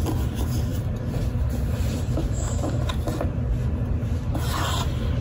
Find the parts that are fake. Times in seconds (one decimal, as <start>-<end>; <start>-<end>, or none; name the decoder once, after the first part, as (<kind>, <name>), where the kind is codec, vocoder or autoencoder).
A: 2.2-2.8 (vocoder, BigVGAN v2)